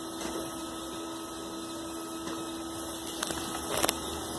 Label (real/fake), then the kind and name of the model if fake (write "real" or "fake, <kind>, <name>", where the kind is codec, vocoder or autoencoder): real